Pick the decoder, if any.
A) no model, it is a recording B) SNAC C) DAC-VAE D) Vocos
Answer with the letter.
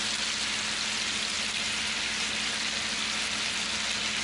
A